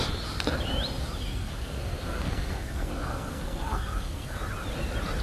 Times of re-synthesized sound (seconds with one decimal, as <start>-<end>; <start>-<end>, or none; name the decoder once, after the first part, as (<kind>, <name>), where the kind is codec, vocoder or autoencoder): 1.3-4.4 (codec, SNAC)